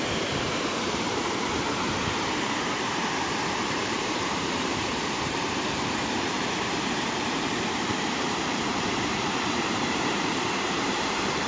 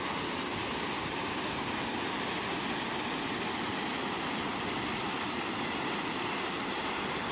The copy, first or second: first